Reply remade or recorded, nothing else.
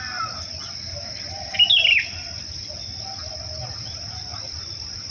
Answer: recorded